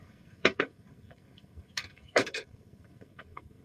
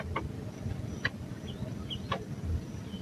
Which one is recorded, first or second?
second